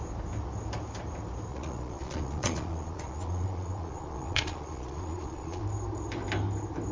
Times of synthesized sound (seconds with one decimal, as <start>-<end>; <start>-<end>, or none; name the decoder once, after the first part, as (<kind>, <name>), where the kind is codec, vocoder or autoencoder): 1.5-5.6 (vocoder, Vocos)